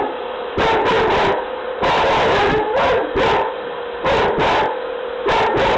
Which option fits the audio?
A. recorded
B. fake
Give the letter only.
A